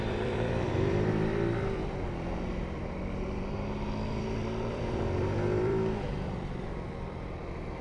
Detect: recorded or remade remade